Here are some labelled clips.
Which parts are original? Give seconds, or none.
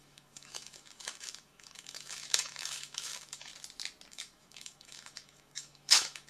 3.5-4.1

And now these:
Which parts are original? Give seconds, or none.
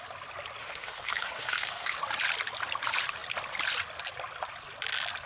0.0-0.6; 2.0-5.3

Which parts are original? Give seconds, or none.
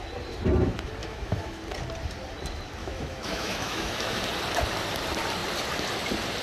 0.0-1.0; 1.6-2.8; 4.2-6.4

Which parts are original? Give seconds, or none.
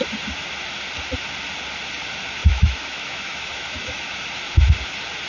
0.0-2.4; 4.2-5.3